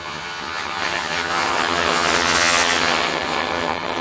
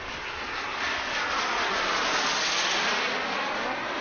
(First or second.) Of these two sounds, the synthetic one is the first